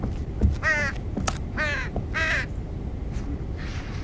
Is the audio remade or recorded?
recorded